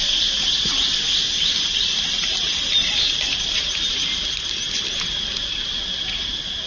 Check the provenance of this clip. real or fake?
real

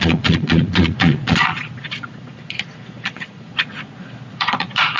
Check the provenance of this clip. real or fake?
fake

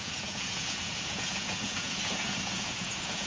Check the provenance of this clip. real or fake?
fake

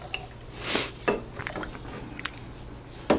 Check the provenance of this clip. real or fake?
real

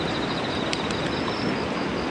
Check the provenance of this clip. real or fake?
real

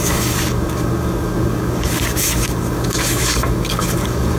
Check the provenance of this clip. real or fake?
fake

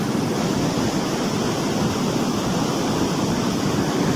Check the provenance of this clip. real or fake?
real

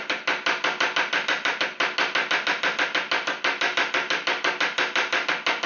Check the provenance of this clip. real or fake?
real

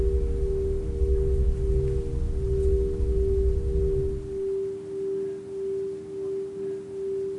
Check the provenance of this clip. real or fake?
real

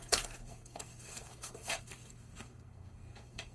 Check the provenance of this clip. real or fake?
fake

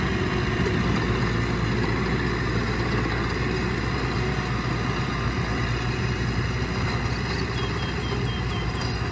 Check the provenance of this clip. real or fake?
real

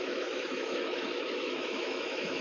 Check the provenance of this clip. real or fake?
fake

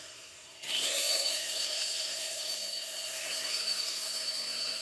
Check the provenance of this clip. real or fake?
fake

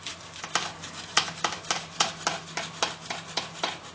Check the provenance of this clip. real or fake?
real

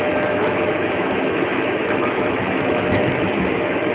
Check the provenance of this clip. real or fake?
fake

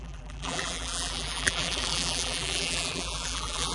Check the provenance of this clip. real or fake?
fake